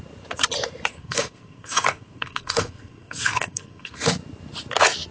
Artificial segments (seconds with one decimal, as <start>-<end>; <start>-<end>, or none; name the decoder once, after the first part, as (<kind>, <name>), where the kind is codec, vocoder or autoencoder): 0.9-4.0 (codec, SNAC)